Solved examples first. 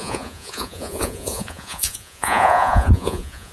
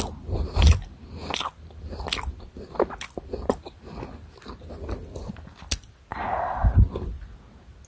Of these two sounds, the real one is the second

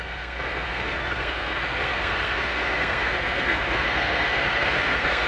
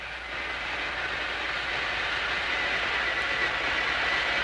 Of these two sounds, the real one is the second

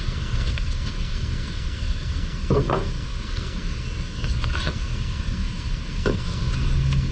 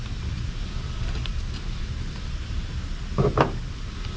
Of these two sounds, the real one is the second